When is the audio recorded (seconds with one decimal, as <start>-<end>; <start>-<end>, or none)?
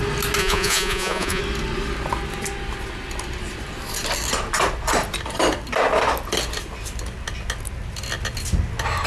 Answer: 0.0-0.4; 1.4-9.1